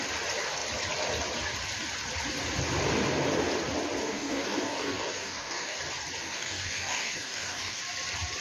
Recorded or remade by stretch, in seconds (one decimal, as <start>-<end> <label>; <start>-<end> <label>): 0.0-4.0 recorded; 4.0-5.8 remade; 5.8-6.2 recorded; 6.2-7.8 remade; 7.8-8.4 recorded

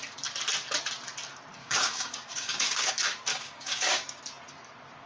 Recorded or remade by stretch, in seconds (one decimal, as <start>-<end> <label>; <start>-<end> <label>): 0.0-1.6 recorded; 1.6-2.9 remade; 2.9-3.3 recorded; 3.3-4.2 remade; 4.2-5.1 recorded